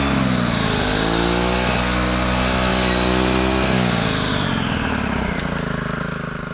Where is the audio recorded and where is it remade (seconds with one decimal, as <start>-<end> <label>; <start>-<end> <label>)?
0.0-6.5 recorded